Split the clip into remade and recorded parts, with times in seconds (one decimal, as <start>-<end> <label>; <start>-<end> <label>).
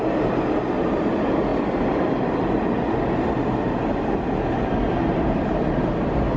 0.0-6.4 recorded